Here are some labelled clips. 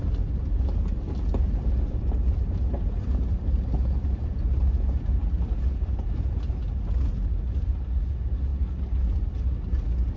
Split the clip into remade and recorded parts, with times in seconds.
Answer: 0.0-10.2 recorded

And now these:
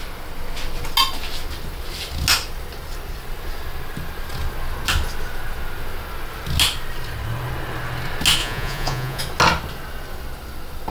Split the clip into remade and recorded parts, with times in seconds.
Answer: 0.0-8.4 recorded; 8.4-9.2 remade; 9.2-10.9 recorded

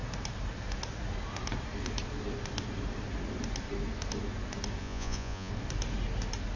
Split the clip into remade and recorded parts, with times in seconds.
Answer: 0.0-4.8 recorded; 4.8-5.5 remade; 5.5-6.6 recorded